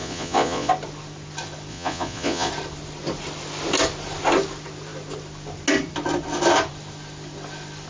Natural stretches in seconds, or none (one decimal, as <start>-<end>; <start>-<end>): 0.7-1.7; 2.5-7.9